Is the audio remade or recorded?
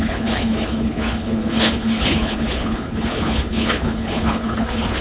remade